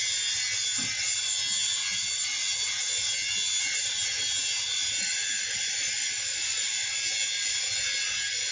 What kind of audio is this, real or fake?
real